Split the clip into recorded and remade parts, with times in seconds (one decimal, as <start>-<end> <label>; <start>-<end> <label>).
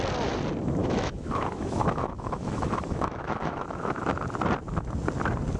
0.0-0.8 recorded; 0.8-4.2 remade; 4.2-5.6 recorded